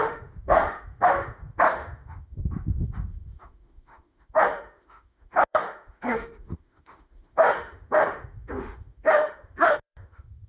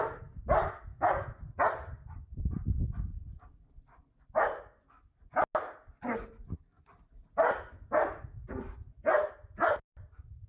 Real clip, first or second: second